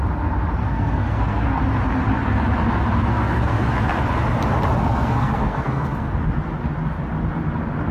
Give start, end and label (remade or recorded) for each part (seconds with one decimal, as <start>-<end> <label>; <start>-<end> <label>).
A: 0.0-0.6 recorded; 0.6-1.5 remade; 1.5-3.1 recorded; 3.1-3.6 remade; 3.6-4.8 recorded; 4.8-6.1 remade; 6.1-7.9 recorded